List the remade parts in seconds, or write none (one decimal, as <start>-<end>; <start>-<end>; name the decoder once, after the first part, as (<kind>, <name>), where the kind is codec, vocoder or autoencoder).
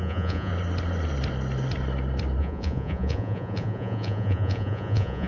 0.0-0.5 (vocoder, Vocos); 2.4-5.3